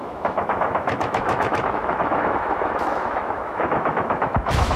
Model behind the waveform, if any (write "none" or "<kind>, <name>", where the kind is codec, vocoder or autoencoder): autoencoder, DAC-VAE